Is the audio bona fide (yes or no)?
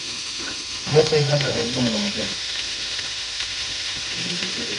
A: no